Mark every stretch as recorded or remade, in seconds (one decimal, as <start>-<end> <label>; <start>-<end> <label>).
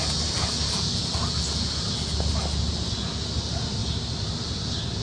0.0-5.0 recorded